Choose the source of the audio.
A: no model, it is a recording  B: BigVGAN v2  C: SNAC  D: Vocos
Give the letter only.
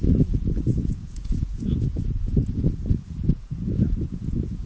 D